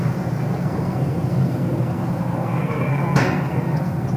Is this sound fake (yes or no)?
yes